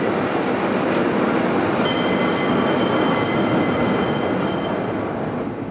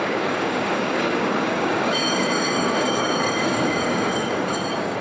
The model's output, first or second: second